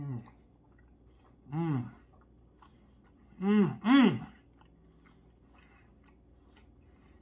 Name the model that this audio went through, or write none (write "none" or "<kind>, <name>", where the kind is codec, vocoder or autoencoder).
none